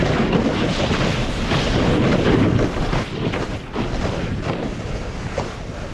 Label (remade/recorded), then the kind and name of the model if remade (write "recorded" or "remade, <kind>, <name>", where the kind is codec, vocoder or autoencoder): recorded